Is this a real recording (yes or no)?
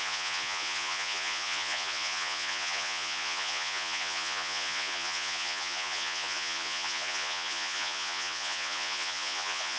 no